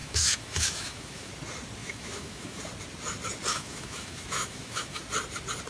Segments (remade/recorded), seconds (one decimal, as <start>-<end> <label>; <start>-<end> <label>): 0.0-1.3 remade; 1.3-1.8 recorded; 1.8-2.6 remade; 2.6-3.5 recorded; 3.5-5.0 remade; 5.0-5.7 recorded